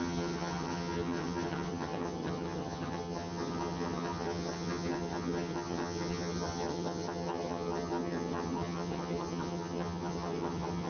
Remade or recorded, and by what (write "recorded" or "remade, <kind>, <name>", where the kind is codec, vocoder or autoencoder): remade, vocoder, HiFi-GAN